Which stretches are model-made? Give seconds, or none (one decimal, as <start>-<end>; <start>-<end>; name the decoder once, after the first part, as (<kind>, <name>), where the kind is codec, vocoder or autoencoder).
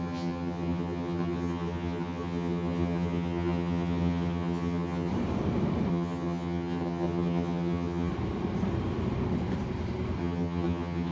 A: 0.0-5.1 (vocoder, HiFi-GAN); 5.9-8.1; 10.2-11.1